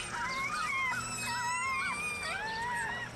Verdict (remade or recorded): recorded